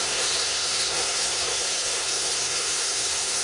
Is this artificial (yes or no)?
yes